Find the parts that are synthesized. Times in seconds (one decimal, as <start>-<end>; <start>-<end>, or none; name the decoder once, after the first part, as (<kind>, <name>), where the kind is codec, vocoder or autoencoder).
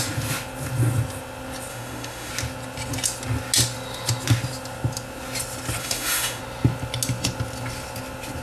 1.7-2.3 (autoencoder, DAC-VAE); 5.8-6.4